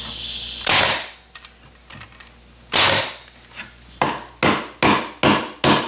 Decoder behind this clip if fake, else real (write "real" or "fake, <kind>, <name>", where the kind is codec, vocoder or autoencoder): real